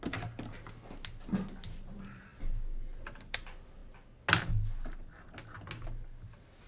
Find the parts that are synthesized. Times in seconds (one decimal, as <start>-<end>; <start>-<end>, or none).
none